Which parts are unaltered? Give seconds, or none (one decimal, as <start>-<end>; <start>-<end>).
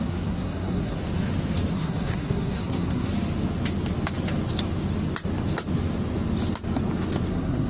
1.0-1.7; 3.1-7.3